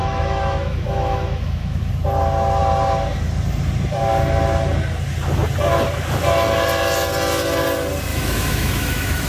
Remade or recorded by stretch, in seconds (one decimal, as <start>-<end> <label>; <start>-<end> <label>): 0.0-1.9 remade; 1.9-8.1 recorded; 8.1-9.3 remade